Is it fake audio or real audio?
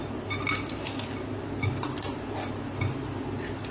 real